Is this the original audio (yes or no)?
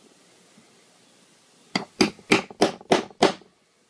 yes